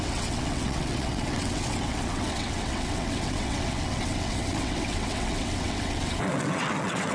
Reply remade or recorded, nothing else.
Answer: remade